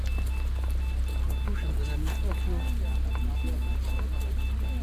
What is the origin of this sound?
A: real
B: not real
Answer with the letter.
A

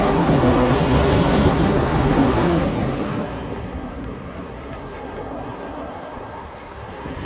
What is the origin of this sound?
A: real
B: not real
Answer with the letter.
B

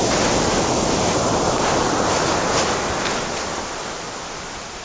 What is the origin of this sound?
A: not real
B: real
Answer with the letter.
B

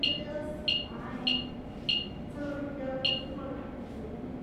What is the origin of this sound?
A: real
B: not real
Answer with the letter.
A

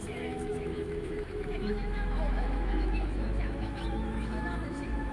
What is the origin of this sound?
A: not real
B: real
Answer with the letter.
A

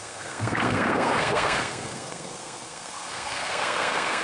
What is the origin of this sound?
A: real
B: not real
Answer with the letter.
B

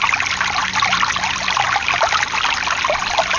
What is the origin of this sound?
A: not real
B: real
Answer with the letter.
B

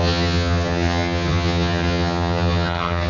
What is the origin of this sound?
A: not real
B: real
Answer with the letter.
A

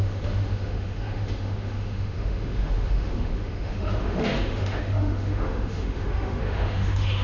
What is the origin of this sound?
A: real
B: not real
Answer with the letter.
B